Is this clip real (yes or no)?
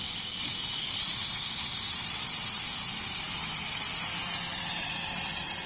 yes